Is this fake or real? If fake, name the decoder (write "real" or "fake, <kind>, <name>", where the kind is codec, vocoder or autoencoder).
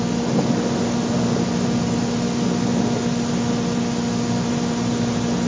real